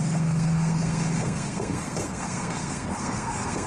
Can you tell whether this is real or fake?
fake